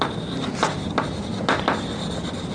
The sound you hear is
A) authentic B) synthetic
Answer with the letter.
A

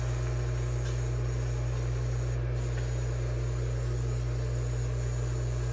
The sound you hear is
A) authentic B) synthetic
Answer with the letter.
A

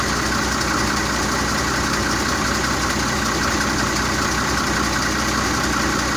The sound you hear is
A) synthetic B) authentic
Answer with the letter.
B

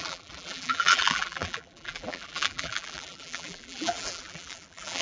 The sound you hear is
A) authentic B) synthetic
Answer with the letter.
B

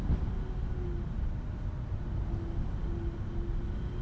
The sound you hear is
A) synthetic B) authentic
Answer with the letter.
B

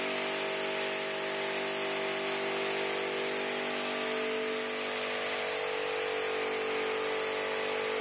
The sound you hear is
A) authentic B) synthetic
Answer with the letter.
A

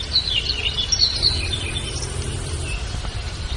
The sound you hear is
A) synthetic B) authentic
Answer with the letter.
B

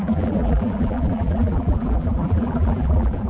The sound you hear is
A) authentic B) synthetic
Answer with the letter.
B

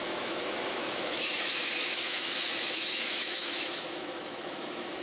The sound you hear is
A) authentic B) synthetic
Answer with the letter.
B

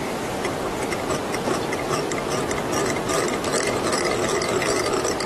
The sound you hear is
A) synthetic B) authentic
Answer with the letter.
B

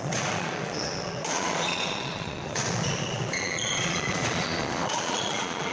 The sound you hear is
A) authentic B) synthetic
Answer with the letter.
B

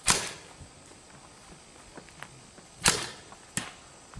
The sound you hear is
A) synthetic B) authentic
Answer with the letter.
B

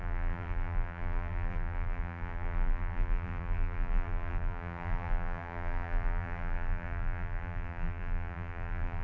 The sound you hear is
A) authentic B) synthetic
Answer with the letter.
B